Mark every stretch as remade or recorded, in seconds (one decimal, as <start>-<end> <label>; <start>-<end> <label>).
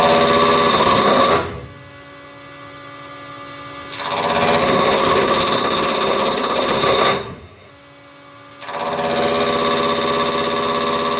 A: 0.0-0.7 recorded; 0.7-1.3 remade; 1.3-4.6 recorded; 4.6-7.7 remade; 7.7-11.2 recorded